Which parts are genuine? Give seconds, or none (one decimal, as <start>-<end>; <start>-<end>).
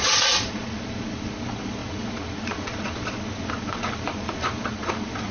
none